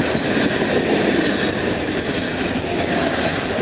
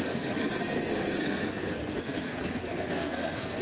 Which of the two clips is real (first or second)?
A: first